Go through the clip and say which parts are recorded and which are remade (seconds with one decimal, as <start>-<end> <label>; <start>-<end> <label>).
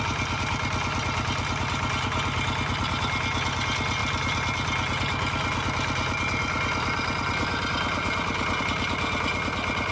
0.0-9.9 recorded